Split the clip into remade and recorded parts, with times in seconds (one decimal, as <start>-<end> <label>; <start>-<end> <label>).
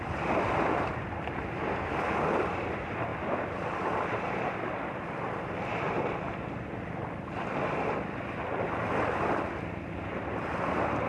0.0-11.1 recorded